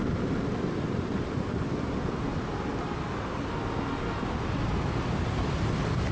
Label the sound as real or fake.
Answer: real